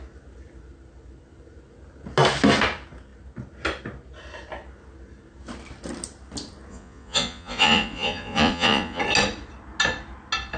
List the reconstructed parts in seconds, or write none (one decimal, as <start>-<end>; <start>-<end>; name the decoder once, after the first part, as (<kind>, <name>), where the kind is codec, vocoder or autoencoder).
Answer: 6.7-9.0 (vocoder, Vocos)